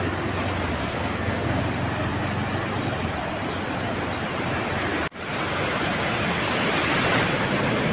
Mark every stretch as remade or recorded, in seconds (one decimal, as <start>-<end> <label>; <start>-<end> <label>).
0.0-0.8 recorded; 0.8-1.6 remade; 1.6-7.9 recorded